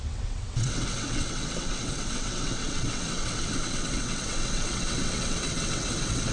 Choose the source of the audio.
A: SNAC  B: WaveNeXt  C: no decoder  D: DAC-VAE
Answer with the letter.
B